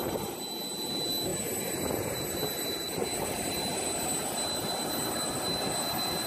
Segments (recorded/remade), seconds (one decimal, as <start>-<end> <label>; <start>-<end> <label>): 0.0-6.3 recorded